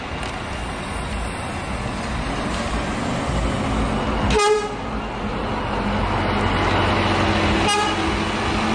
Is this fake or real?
real